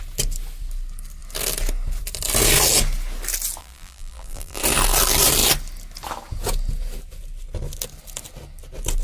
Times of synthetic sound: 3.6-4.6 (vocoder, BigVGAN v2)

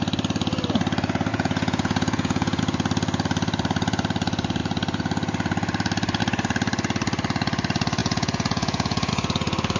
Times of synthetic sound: 1.3-2.6 (vocoder, Vocos); 8.0-9.1

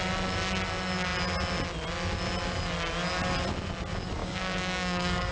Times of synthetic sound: 4.2-5.3 (codec, DAC)

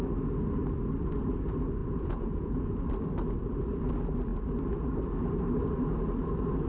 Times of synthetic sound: 1.8-2.8 (vocoder, Vocos)

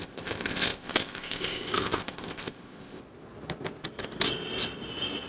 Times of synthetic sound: 0.0-3.0 (codec, ZipCodec)

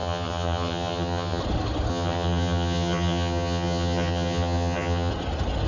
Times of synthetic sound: 0.0-1.4 (vocoder, HiFi-GAN); 1.9-5.1

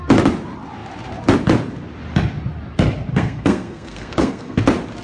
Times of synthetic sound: 3.1-4.6 (codec, SNAC)